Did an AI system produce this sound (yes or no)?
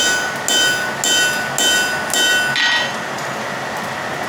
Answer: no